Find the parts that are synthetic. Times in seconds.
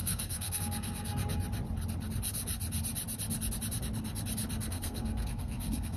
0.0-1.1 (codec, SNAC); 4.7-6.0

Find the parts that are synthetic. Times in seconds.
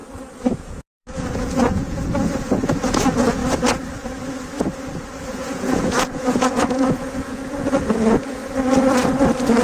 0.6-3.4 (vocoder, Vocos); 5.3-8.4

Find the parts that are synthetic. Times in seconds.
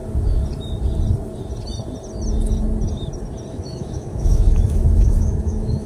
3.5-5.9 (autoencoder, DAC-VAE)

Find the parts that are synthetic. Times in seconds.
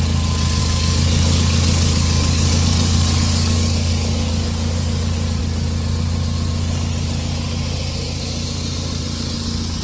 0.6-5.4 (codec, DAC)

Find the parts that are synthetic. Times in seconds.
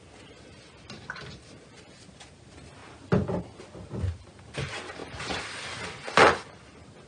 none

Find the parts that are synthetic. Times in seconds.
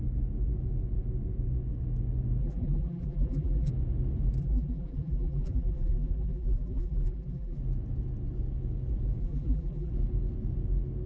2.4-3.7 (vocoder, BigVGAN v2); 4.4-7.6; 9.2-9.9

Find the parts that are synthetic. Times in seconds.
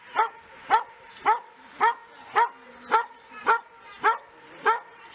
none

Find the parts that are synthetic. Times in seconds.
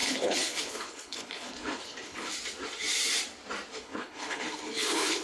0.0-2.3 (codec, HILCodec); 3.7-5.2